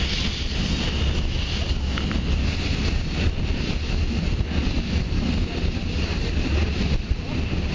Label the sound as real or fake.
real